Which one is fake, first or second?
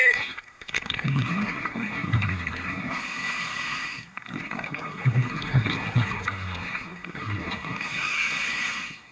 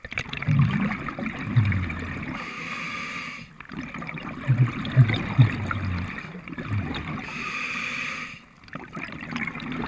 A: first